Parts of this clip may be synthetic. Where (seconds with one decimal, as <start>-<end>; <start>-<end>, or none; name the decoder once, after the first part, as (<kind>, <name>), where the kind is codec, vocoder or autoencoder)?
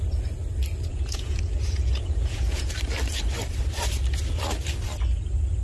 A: 0.9-2.7 (vocoder, Vocos)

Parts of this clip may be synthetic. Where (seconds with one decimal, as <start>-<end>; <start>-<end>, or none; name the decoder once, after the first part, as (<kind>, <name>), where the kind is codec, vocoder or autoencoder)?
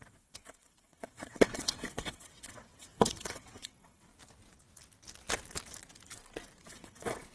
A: 0.0-4.1 (vocoder, WaveNeXt); 6.6-7.3